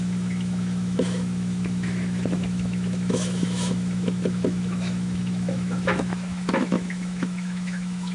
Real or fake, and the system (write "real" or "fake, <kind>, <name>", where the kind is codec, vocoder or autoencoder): fake, autoencoder, DAC-VAE